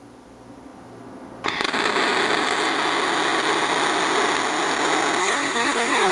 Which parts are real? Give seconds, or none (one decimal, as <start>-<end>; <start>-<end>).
0.0-5.2